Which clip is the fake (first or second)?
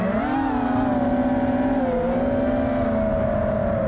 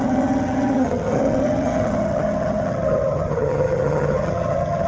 second